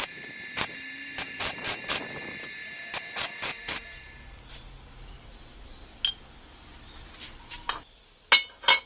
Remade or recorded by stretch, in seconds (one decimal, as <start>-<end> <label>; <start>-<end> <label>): 0.0-8.9 recorded